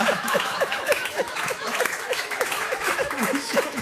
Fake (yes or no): yes